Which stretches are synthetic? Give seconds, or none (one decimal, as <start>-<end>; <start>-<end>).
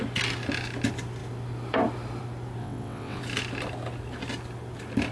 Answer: 2.6-3.2